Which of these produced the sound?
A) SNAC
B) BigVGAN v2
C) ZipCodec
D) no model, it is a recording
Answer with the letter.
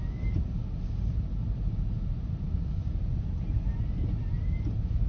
D